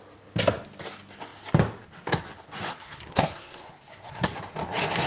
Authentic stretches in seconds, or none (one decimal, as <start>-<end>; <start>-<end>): 0.0-2.7; 4.4-5.1